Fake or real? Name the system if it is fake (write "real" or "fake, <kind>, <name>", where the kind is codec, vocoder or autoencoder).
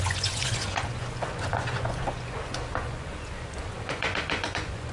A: fake, vocoder, Vocos